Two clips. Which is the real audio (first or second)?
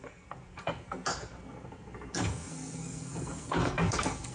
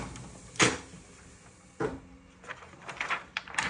second